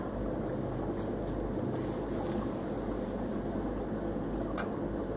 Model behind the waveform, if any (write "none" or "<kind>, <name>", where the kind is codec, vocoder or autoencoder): none